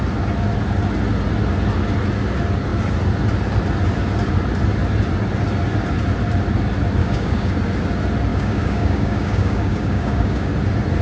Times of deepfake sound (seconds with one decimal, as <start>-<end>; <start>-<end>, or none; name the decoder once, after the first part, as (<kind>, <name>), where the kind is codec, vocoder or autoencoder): 7.0-7.5 (codec, DAC); 8.3-10.5